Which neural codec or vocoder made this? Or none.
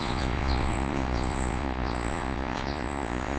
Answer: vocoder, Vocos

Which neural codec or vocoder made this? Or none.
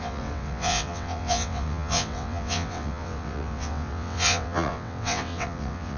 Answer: vocoder, WaveNeXt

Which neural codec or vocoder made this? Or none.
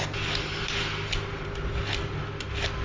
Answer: none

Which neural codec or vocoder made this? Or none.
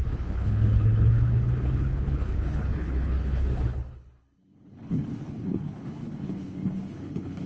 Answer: codec, HILCodec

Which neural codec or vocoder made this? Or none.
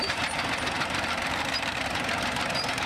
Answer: vocoder, BigVGAN v2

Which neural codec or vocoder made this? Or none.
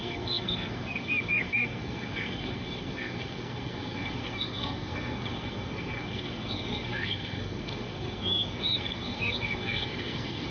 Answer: codec, SNAC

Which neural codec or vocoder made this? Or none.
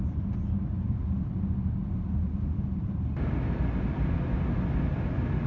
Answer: none